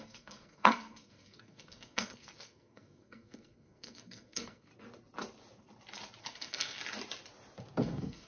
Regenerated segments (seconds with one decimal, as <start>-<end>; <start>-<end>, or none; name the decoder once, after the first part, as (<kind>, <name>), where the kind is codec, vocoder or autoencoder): 0.0-4.7 (codec, SNAC); 6.2-6.8; 7.8-8.3